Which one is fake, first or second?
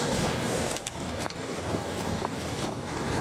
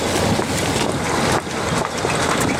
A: first